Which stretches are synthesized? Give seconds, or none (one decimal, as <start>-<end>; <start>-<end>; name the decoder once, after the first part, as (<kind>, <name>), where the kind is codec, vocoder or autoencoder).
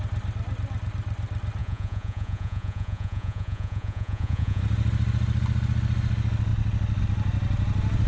1.6-4.6 (vocoder, Vocos)